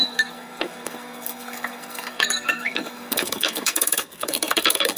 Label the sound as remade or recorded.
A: remade